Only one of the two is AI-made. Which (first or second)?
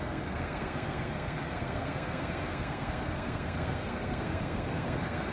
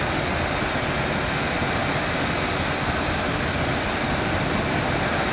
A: first